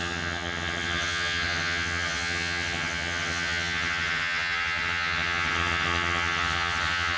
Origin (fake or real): fake